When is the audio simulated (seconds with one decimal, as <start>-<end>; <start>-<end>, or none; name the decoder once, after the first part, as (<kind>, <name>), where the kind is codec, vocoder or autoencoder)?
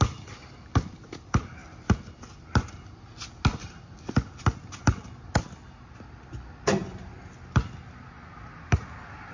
none